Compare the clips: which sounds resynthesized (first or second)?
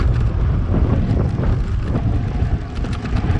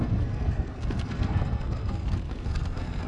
second